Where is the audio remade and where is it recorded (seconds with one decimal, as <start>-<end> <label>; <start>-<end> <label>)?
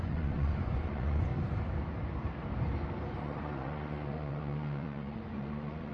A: 0.0-1.3 remade; 1.3-3.2 recorded; 3.2-5.9 remade